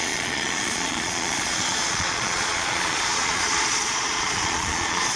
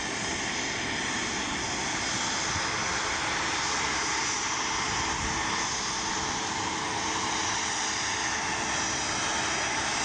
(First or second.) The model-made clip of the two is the first